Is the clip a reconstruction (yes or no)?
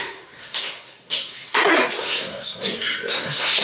yes